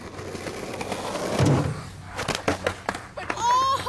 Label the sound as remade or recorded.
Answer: recorded